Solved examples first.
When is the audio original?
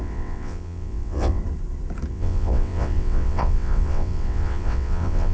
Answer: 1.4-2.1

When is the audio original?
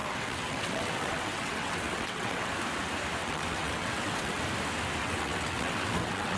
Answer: 2.5-3.2; 4.4-5.0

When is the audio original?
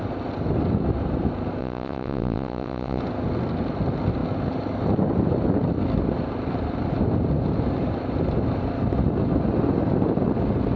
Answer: 0.0-1.6; 3.0-10.8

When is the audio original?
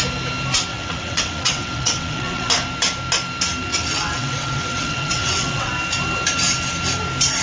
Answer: 0.0-0.7; 2.5-3.7; 5.7-7.4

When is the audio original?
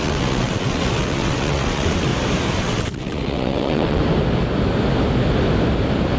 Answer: 2.1-2.6; 4.0-6.2